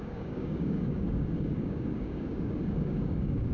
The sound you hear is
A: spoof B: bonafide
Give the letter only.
A